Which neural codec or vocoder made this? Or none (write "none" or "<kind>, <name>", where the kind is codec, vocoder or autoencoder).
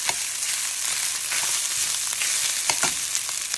none